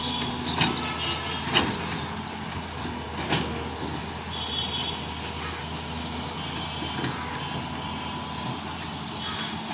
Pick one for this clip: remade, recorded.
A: recorded